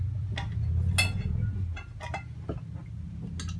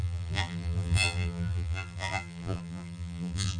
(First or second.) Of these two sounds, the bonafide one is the first